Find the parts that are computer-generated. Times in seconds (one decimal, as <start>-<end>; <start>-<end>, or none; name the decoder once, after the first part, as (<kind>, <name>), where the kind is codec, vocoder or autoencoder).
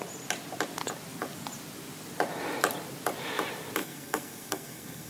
3.8-5.1 (codec, SNAC)